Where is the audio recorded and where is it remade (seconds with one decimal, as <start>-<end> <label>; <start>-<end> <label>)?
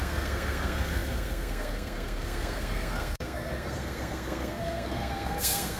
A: 0.0-5.8 remade